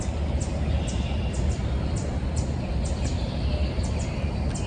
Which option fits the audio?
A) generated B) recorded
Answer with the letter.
B